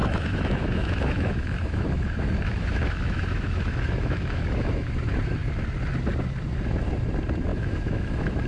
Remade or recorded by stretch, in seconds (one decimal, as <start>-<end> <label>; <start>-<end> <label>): 0.0-4.9 remade; 4.9-7.5 recorded; 7.5-8.5 remade